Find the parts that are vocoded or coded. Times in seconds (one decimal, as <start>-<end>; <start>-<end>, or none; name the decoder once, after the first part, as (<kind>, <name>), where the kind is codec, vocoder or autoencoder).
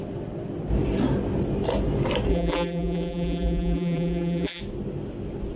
2.3-4.6 (vocoder, BigVGAN v2)